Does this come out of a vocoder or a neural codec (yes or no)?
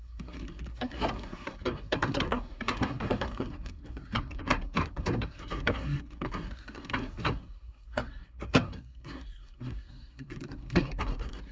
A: yes